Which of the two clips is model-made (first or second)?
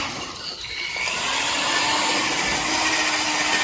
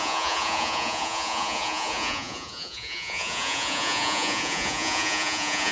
second